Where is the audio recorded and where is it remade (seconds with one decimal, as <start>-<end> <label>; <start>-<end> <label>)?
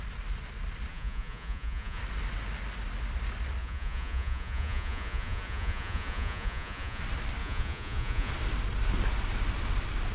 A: 0.0-0.9 recorded; 0.9-2.0 remade; 2.0-3.6 recorded; 3.6-7.0 remade; 7.0-7.4 recorded; 7.4-8.3 remade; 8.3-10.1 recorded